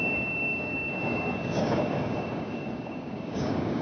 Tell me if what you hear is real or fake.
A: fake